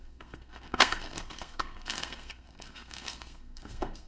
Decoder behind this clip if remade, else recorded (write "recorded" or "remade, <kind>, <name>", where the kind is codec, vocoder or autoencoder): remade, codec, SNAC